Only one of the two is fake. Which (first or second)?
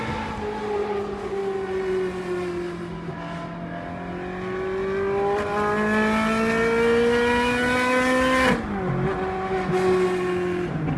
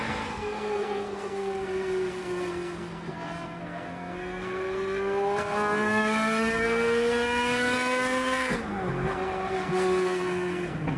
second